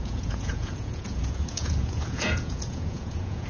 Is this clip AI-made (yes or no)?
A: yes